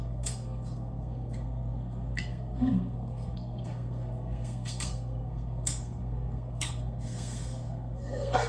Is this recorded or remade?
remade